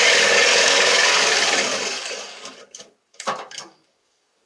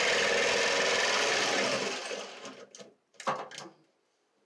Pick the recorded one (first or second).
second